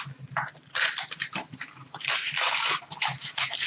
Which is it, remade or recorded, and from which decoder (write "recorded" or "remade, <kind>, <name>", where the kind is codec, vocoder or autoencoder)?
recorded